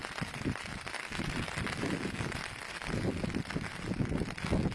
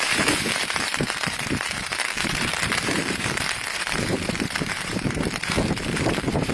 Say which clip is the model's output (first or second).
second